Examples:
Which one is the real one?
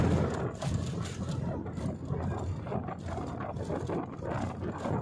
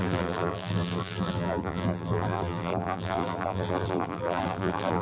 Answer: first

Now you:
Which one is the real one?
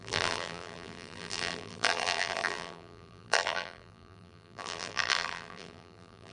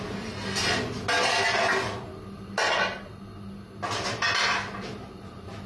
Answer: second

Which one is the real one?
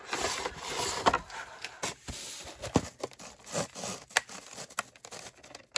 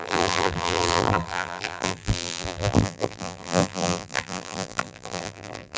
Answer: first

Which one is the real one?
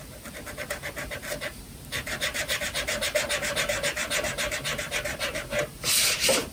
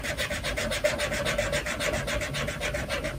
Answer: second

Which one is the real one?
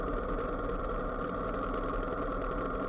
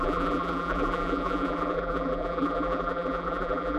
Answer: first